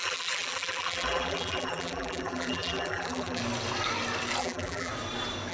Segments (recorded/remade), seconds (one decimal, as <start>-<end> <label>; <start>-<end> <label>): 0.0-3.4 remade; 3.4-4.4 recorded; 4.4-4.9 remade; 4.9-5.5 recorded